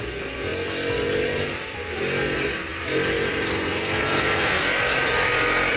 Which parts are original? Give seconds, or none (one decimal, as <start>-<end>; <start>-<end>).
0.0-2.7